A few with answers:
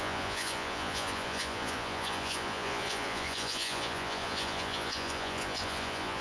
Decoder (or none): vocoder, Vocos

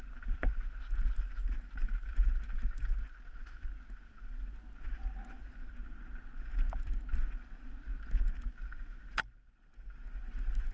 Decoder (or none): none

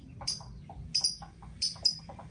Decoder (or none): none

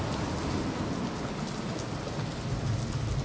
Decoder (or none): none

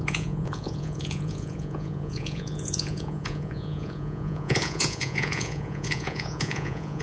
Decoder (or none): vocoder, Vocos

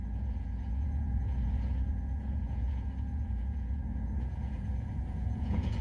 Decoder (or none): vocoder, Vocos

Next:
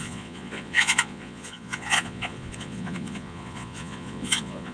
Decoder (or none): vocoder, Vocos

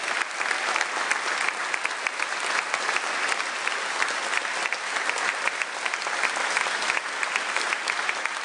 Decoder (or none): none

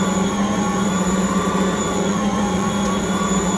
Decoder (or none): vocoder, Vocos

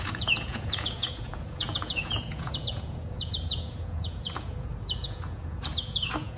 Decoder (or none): vocoder, Vocos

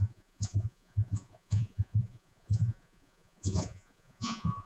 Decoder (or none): vocoder, Vocos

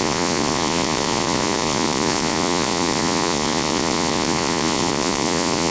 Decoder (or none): vocoder, Vocos